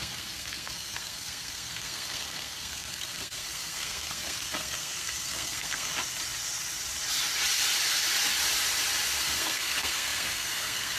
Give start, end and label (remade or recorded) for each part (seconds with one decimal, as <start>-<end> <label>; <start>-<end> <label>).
0.0-5.9 remade; 5.9-9.2 recorded; 9.2-11.0 remade